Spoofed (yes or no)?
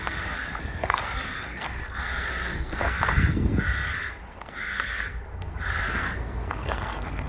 yes